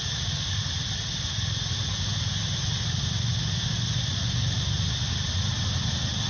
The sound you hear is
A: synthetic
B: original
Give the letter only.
B